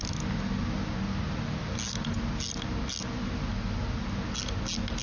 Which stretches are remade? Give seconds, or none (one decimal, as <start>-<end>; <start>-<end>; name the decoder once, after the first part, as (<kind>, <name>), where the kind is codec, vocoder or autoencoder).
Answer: none